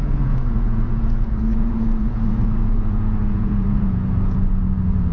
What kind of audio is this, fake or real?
fake